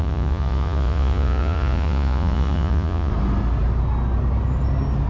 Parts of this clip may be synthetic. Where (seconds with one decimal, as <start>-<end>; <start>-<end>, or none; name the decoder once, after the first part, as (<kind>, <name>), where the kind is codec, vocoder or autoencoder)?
0.0-3.1 (vocoder, Vocos)